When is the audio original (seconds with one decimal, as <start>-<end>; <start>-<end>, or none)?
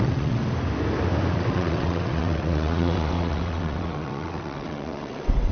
0.4-1.3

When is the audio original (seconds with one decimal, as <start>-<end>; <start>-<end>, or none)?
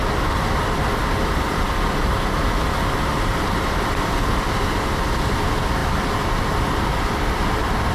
2.4-7.9